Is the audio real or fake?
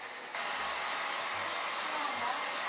real